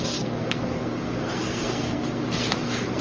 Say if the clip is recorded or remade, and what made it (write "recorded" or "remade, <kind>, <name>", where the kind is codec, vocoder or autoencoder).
remade, codec, SNAC